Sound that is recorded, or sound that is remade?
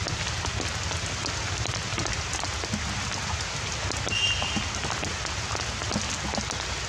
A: recorded